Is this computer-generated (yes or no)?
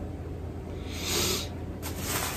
no